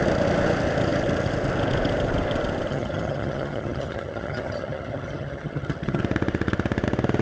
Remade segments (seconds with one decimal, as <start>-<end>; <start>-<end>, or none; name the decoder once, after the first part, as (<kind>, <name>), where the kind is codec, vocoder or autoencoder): 2.7-6.0 (vocoder, HiFi-GAN)